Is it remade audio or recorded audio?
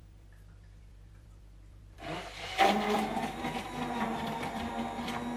remade